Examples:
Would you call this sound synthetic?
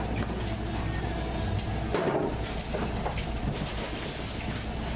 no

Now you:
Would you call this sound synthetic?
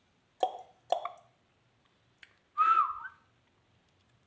no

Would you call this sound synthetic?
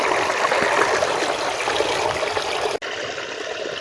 no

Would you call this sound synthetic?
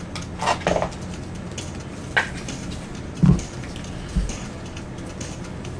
no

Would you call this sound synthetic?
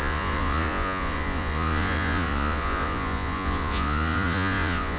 yes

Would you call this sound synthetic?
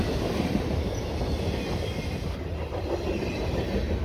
no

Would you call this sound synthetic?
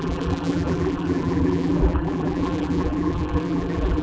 yes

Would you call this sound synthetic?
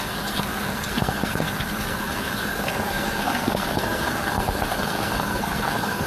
yes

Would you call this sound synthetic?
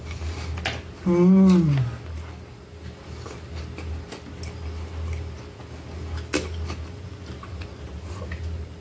no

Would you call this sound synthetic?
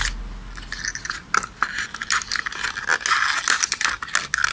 no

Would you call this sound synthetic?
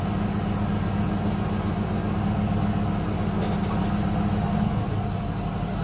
no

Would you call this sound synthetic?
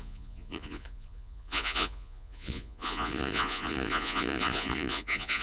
yes